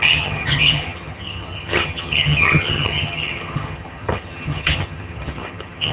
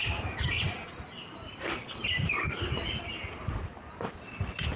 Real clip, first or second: second